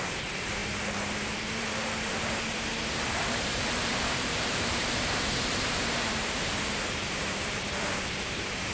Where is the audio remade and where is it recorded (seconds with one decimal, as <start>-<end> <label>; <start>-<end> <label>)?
0.0-8.7 remade